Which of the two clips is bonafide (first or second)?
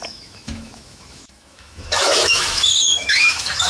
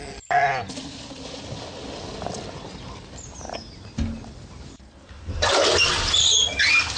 second